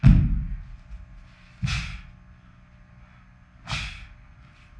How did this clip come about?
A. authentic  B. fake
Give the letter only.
A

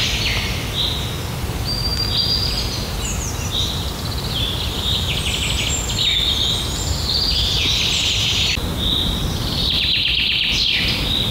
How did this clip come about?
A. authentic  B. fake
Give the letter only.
A